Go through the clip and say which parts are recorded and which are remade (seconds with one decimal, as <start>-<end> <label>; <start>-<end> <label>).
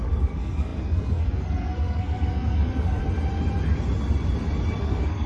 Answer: 0.0-3.0 remade; 3.0-4.8 recorded; 4.8-5.3 remade